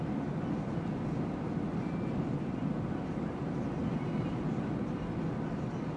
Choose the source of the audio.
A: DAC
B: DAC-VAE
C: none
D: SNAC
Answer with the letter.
C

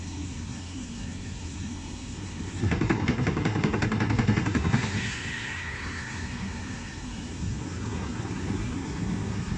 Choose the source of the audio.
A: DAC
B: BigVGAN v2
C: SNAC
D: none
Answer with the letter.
C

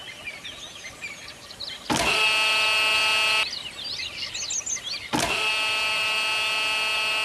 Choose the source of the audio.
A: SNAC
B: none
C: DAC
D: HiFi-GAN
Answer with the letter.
B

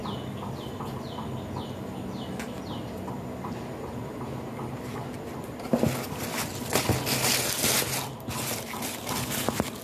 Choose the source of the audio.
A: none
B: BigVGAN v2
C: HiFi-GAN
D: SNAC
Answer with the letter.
A